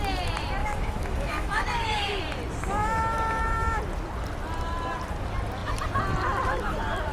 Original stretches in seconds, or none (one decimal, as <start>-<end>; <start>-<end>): 0.0-0.6; 2.2-2.8; 3.8-7.1